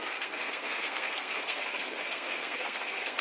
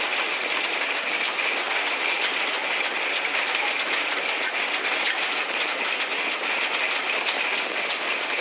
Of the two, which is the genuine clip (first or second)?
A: second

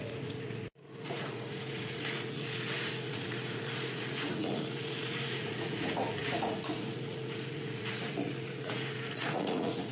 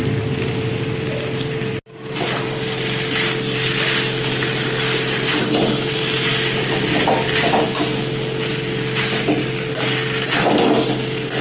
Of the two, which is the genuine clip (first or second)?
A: second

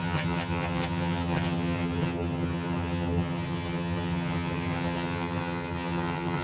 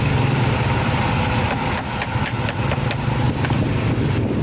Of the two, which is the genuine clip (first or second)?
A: second